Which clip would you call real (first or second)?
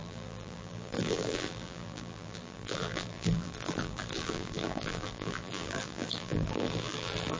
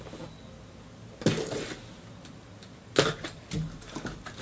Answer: second